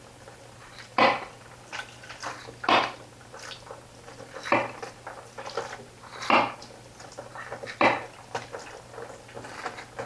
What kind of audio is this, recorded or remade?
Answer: recorded